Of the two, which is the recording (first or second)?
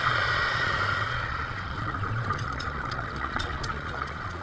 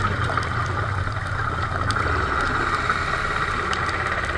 second